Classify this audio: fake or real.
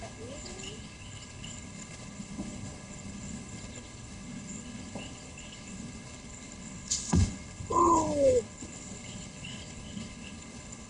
fake